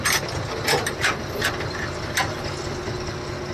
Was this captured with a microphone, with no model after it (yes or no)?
yes